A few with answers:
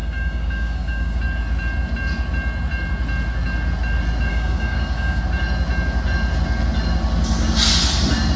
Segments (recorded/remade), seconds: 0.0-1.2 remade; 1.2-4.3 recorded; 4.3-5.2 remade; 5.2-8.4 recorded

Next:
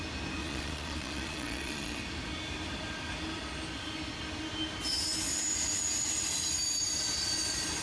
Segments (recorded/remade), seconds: 0.0-0.4 recorded; 0.4-2.0 remade; 2.0-7.8 recorded

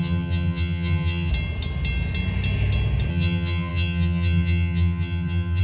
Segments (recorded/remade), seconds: 0.0-1.3 remade; 1.3-3.1 recorded; 3.1-5.6 remade

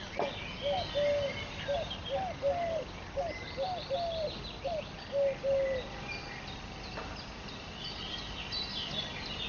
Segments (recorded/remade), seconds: 0.0-9.5 recorded

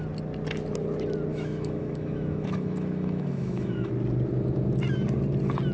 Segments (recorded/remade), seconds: 0.0-1.3 recorded; 1.3-3.9 remade; 3.9-5.7 recorded

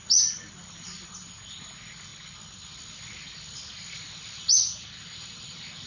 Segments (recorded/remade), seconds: 0.0-2.1 remade; 2.1-5.9 recorded

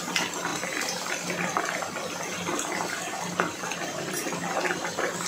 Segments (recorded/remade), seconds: 0.0-0.5 recorded; 0.5-1.6 remade; 1.6-2.5 recorded; 2.5-5.3 remade